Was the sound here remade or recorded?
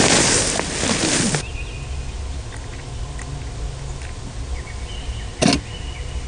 recorded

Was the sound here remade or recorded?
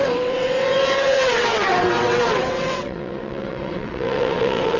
remade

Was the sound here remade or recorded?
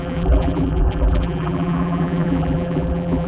remade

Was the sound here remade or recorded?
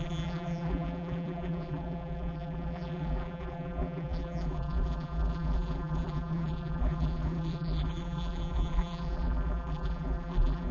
remade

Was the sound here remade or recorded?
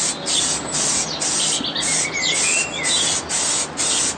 recorded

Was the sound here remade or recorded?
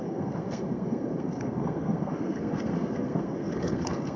remade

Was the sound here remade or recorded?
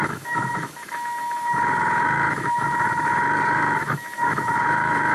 remade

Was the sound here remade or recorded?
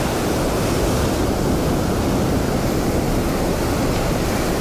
recorded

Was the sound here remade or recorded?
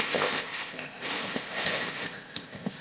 remade